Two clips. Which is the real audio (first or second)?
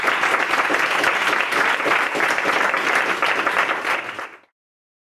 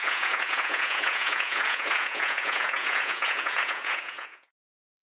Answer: first